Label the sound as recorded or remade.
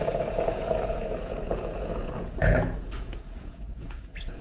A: remade